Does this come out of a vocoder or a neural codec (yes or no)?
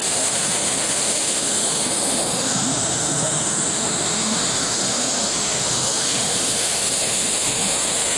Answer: yes